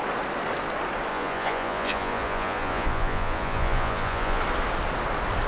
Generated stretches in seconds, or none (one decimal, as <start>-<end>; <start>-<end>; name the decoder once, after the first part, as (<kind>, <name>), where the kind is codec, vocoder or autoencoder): 1.1-4.4 (vocoder, Vocos)